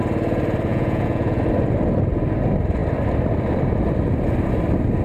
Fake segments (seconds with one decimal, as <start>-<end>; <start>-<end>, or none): 0.7-1.4